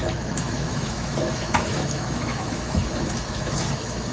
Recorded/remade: remade